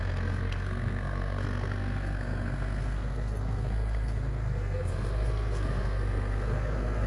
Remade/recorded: remade